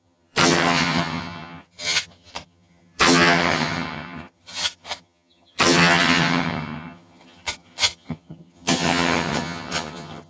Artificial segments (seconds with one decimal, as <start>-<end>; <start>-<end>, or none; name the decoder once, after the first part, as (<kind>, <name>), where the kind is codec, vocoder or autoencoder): 0.0-10.3 (vocoder, HiFi-GAN)